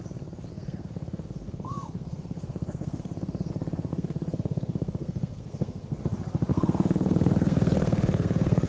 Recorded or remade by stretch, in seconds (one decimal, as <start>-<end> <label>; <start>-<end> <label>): 0.0-0.5 recorded; 0.5-3.5 remade; 3.5-3.9 recorded; 3.9-6.0 remade; 6.0-6.5 recorded; 6.5-8.7 remade